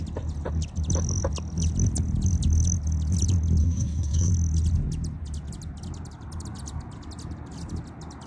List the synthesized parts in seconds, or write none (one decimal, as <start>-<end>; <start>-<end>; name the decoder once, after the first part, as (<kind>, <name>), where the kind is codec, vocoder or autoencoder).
3.6-4.3 (codec, SNAC)